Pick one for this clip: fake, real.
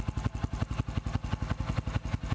real